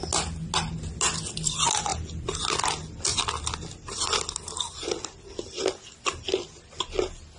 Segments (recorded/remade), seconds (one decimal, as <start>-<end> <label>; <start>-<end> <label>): 0.0-7.4 recorded